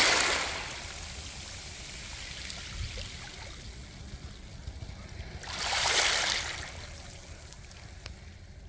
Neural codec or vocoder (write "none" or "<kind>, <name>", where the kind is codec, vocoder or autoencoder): none